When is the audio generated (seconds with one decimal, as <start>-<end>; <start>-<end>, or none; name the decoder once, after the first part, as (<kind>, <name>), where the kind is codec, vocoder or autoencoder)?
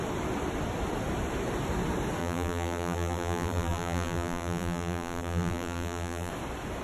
2.2-6.3 (vocoder, BigVGAN v2)